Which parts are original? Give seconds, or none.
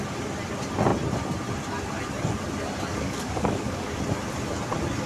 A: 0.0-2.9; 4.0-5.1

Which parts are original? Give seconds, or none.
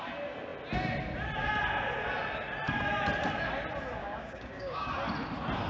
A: 0.0-4.0; 4.9-5.7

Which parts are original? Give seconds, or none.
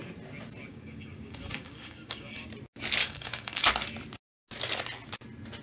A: 0.0-0.7; 2.5-3.0; 3.7-5.6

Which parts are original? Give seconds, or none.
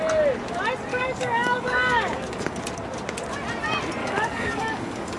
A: 0.0-0.9; 2.6-4.0